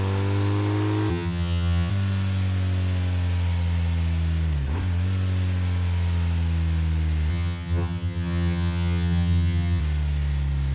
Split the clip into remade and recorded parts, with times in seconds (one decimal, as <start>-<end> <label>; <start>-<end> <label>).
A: 0.0-1.1 recorded; 1.1-1.9 remade; 1.9-7.3 recorded; 7.3-9.8 remade; 9.8-10.7 recorded